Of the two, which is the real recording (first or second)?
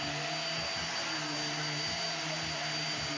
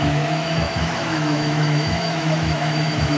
first